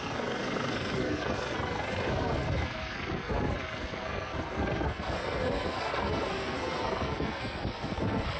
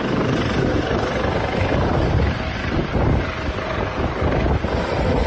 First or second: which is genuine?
second